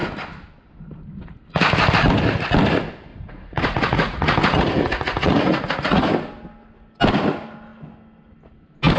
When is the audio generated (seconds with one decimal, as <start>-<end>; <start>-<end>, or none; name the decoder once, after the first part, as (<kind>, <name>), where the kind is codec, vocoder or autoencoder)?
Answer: 3.1-6.1 (vocoder, Vocos)